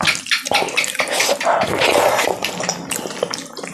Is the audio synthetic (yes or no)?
no